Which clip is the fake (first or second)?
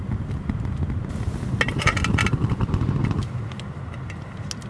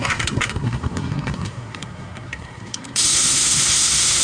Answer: second